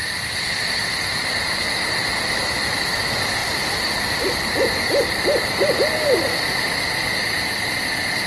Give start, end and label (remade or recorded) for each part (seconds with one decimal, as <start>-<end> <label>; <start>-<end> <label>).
0.0-8.3 recorded

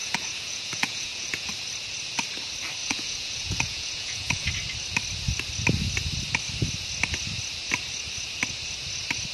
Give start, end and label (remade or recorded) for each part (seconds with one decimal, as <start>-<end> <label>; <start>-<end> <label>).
0.0-1.5 remade; 1.5-2.8 recorded; 2.8-4.5 remade; 4.5-9.3 recorded

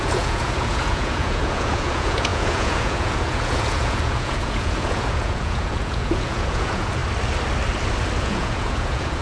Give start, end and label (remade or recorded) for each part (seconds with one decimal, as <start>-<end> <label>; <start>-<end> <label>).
0.0-7.0 remade; 7.0-8.2 recorded; 8.2-9.2 remade

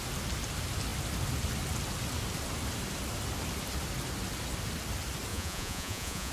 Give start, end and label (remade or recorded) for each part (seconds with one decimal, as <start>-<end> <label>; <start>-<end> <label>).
0.0-5.3 recorded; 5.3-6.3 remade